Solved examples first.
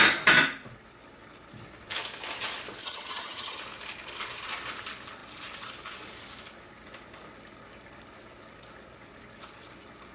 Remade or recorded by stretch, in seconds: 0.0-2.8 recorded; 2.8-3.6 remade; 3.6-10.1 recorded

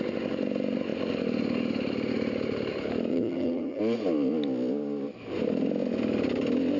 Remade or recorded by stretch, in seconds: 0.0-3.1 recorded; 3.1-3.8 remade; 3.8-6.8 recorded

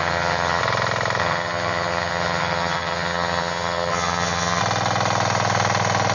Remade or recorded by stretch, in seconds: 0.0-0.6 remade; 0.6-1.2 recorded; 1.2-4.6 remade; 4.6-6.1 recorded

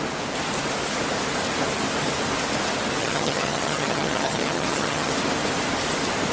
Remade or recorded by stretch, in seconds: 0.0-3.0 recorded; 3.0-5.1 remade; 5.1-6.3 recorded